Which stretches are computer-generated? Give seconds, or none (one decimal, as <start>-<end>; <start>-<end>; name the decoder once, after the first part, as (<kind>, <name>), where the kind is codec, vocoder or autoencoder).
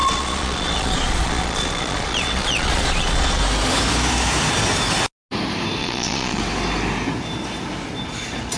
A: 0.0-3.4 (vocoder, Vocos); 5.8-6.4